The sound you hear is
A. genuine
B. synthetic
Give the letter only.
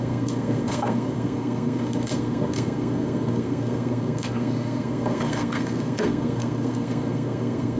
B